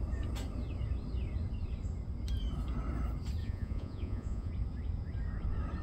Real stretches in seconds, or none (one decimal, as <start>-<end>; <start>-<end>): 0.0-3.4; 4.5-5.8